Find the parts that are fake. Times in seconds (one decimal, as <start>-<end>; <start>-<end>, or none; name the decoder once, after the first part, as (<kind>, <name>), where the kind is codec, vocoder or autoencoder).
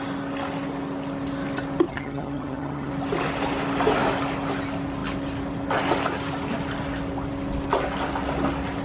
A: 1.9-2.9 (vocoder, HiFi-GAN)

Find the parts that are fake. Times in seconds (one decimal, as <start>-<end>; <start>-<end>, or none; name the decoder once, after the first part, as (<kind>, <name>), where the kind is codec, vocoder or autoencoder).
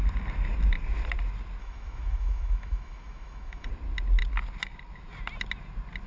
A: 1.6-3.7 (autoencoder, DAC-VAE)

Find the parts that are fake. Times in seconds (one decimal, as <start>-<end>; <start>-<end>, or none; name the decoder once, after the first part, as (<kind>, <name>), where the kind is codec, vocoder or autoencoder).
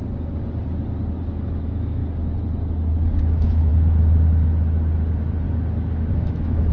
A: 1.2-2.0 (autoencoder, DAC-VAE); 3.2-3.7; 6.1-6.7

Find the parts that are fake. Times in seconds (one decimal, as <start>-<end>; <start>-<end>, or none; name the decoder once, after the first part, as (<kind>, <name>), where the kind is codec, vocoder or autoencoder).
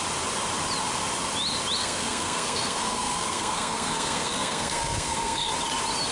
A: 1.8-5.5 (codec, SNAC)